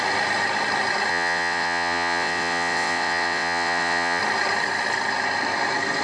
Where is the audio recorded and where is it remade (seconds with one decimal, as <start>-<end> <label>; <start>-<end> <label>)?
0.0-1.1 recorded; 1.1-4.2 remade; 4.2-6.0 recorded